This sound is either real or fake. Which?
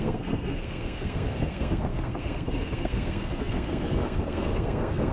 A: fake